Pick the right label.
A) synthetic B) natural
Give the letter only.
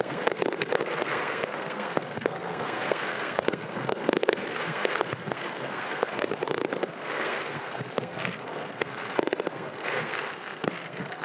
A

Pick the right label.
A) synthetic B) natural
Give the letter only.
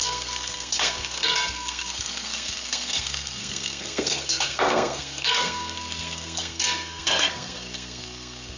A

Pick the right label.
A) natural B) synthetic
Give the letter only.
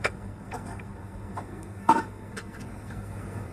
B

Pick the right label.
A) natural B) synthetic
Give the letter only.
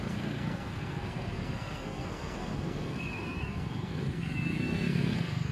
B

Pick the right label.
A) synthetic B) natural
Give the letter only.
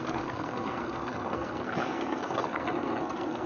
A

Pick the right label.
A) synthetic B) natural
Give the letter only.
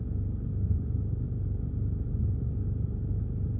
B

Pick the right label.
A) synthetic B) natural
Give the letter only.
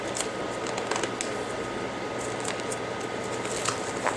B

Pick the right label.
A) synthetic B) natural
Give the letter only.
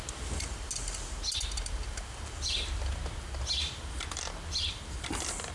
B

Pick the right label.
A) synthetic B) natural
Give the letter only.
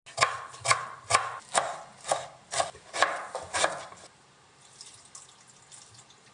B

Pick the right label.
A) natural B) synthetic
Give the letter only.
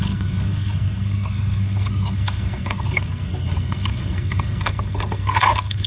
B